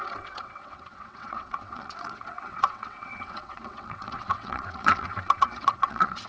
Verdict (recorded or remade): remade